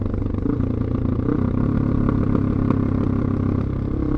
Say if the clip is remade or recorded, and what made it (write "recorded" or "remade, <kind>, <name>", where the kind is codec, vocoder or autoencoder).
recorded